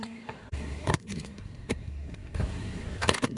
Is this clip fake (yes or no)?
yes